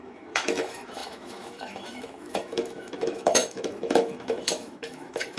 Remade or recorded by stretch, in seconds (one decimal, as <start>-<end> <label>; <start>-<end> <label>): 0.0-5.4 remade